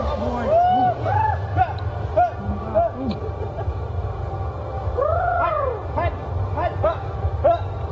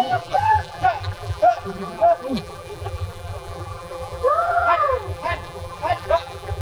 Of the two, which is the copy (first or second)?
second